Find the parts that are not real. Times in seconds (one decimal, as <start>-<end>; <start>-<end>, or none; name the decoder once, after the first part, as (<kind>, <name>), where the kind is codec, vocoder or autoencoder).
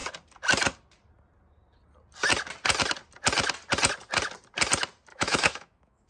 5.1-6.1 (autoencoder, DAC-VAE)